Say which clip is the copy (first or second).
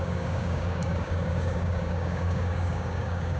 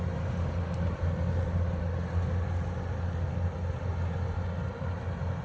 first